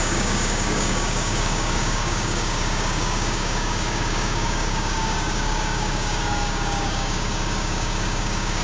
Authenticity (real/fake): fake